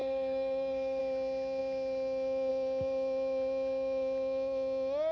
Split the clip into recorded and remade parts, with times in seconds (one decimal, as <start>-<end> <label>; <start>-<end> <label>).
0.0-1.0 remade; 1.0-5.1 recorded